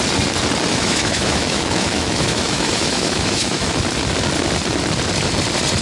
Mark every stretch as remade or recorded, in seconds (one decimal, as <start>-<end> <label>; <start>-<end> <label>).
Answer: 0.0-0.7 recorded; 0.7-3.8 remade; 3.8-5.8 recorded